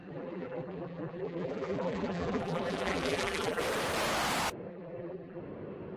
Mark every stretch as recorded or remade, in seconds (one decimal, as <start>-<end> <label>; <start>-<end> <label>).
0.0-3.6 remade; 3.6-4.7 recorded; 4.7-5.4 remade; 5.4-6.0 recorded

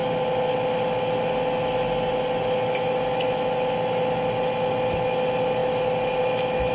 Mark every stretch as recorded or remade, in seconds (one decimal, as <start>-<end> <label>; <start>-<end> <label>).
0.0-6.7 recorded